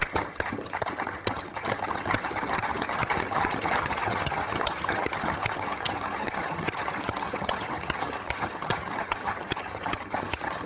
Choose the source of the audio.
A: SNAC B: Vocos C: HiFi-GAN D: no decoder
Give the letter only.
C